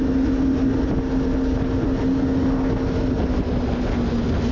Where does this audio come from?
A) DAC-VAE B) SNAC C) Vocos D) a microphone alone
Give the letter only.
D